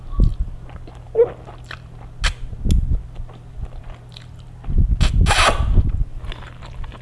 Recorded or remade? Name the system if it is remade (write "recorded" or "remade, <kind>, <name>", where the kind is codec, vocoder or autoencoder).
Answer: recorded